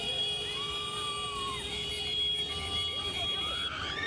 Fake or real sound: fake